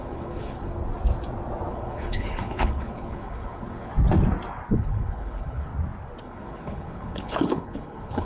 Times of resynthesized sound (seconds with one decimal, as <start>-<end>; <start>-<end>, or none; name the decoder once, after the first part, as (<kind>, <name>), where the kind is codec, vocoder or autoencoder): 0.0-0.7 (codec, HILCodec); 1.7-3.9; 4.7-5.7; 6.2-8.2